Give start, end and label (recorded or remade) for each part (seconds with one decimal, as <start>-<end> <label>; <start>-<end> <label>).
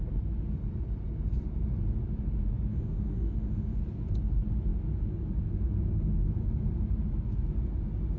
0.0-2.7 recorded; 2.7-3.8 remade; 3.8-8.2 recorded